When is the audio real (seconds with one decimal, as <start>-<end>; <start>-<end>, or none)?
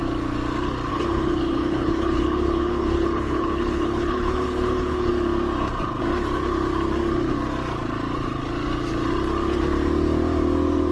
0.0-0.9; 5.1-10.9